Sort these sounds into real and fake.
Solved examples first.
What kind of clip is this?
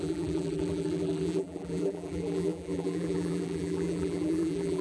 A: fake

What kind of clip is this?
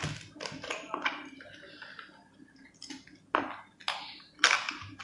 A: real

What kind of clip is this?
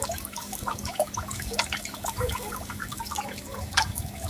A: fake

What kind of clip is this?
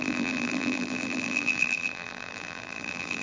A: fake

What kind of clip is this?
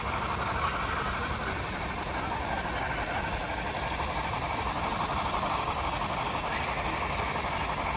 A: real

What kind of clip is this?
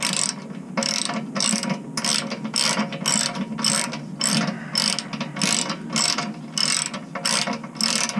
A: real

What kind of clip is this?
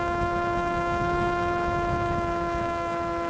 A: fake